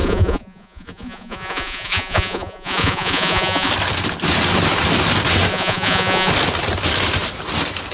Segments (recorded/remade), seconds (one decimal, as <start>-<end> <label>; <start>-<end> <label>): 0.0-3.7 remade; 3.7-5.5 recorded; 5.5-6.3 remade; 6.3-7.9 recorded